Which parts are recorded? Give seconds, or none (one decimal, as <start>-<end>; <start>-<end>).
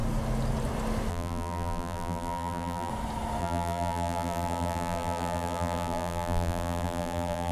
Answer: 0.0-1.1; 2.9-3.4